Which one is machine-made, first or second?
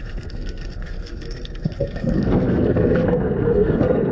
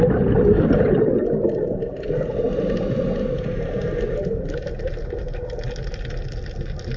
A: first